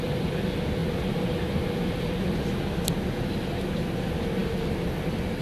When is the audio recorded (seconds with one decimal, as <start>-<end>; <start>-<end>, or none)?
0.0-0.8; 2.5-5.4